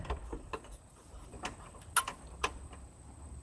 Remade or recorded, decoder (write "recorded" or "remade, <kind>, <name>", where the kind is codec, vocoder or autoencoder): remade, vocoder, BigVGAN v2